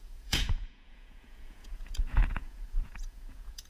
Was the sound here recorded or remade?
remade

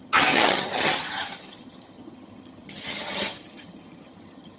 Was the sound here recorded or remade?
remade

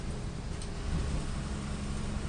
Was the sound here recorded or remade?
recorded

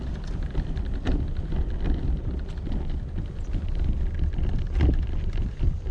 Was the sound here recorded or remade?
recorded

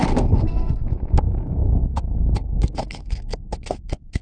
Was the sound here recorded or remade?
remade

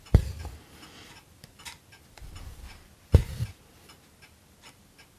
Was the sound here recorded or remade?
recorded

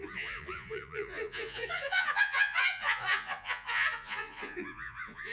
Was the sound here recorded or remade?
remade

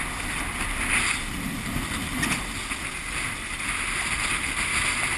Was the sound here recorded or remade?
recorded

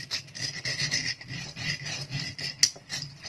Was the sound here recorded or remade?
recorded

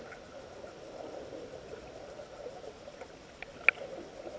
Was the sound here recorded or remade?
recorded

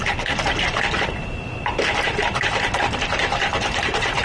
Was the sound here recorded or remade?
remade